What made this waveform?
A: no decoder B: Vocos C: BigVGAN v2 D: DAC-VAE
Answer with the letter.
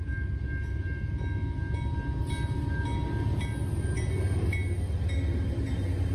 A